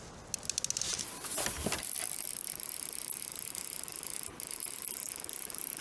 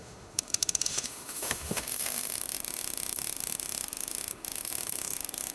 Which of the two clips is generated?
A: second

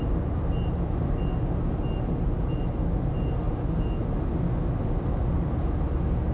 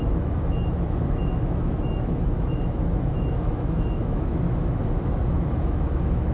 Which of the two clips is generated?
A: second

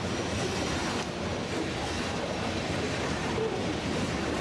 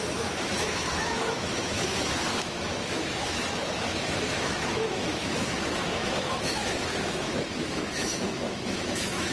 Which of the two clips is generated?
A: second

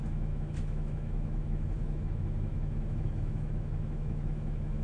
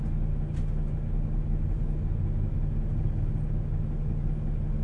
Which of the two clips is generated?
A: first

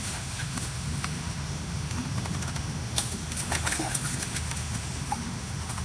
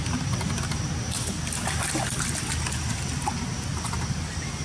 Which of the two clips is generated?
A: first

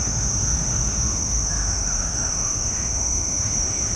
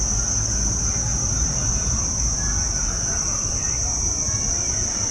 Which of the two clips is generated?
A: first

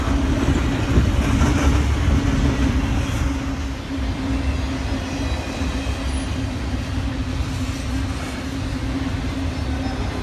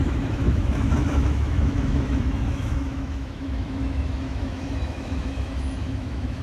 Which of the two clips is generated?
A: second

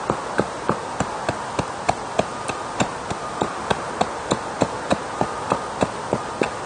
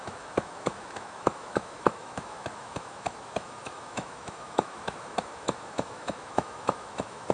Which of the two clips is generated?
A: second